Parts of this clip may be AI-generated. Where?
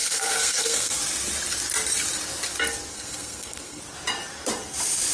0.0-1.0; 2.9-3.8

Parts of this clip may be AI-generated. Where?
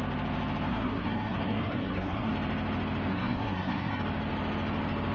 0.7-2.3; 3.1-4.0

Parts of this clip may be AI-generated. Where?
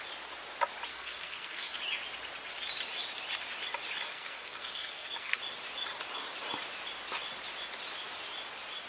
0.9-1.8; 4.1-5.4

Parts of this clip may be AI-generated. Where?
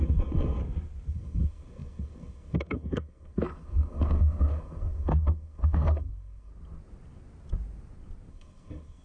0.0-0.6; 1.1-6.5; 8.3-9.0